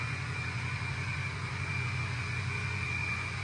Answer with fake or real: fake